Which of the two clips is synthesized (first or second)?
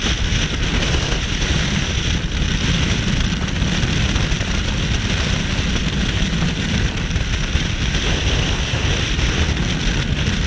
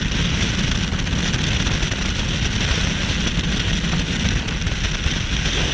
first